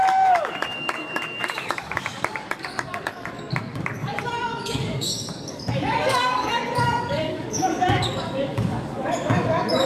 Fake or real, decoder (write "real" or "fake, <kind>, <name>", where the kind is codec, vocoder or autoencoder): fake, codec, DAC